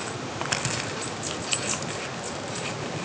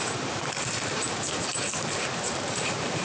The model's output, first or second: second